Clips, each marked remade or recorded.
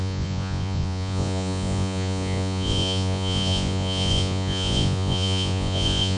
remade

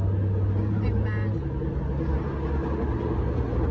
recorded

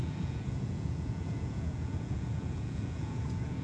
remade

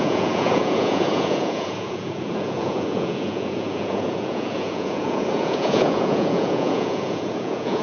remade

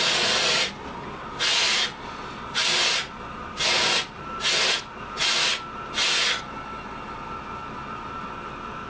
recorded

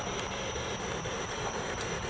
recorded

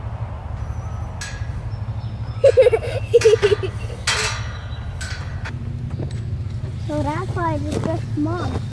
recorded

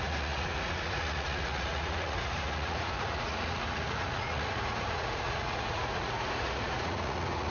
remade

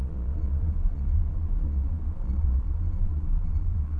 remade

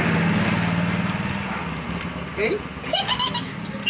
recorded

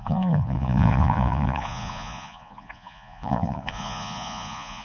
remade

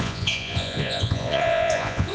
remade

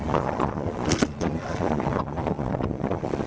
remade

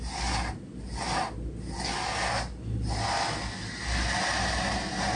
recorded